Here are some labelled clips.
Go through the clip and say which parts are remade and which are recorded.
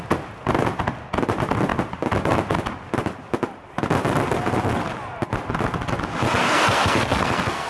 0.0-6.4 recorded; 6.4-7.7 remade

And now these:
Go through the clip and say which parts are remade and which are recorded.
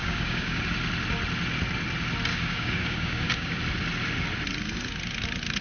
0.0-0.6 remade; 0.6-2.3 recorded; 2.3-3.6 remade; 3.6-5.6 recorded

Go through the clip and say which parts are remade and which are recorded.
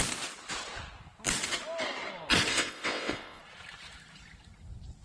0.0-2.5 recorded; 2.5-3.4 remade; 3.4-5.0 recorded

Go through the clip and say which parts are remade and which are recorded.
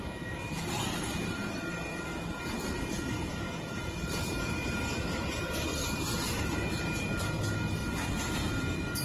0.0-7.8 remade; 7.8-9.0 recorded